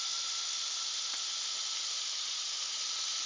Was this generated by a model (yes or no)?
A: no